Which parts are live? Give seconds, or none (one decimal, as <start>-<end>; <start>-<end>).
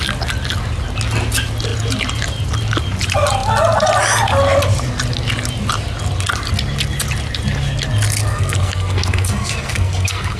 0.0-8.3